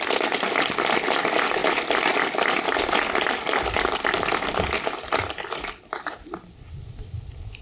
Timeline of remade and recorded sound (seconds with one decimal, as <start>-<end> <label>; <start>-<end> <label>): 0.0-7.6 recorded